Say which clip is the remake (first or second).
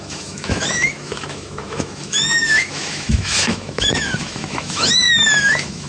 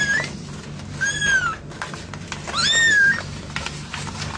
first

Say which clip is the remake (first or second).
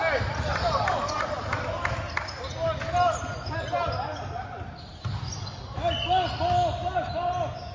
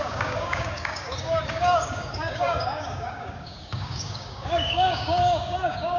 second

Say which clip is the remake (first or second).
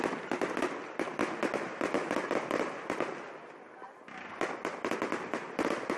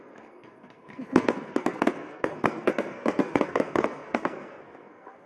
second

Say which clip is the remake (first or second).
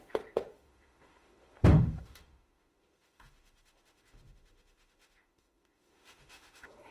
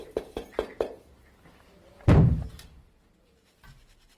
first